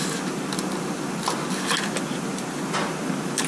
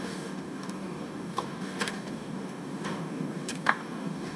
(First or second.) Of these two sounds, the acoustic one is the first